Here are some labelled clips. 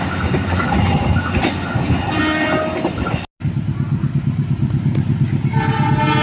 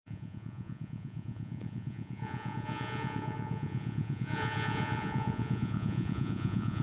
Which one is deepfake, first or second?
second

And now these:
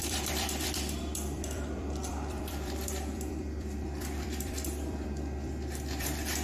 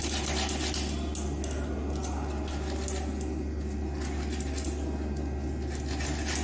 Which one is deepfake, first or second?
first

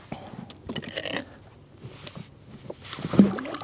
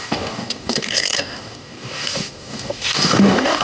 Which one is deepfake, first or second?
second